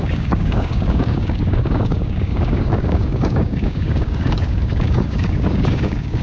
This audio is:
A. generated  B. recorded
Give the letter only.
A